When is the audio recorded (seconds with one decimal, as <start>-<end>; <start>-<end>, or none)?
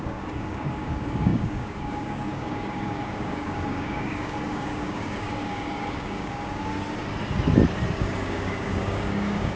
6.7-7.9